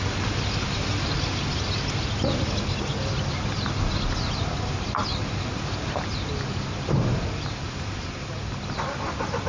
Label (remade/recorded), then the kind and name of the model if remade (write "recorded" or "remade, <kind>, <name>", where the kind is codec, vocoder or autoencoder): recorded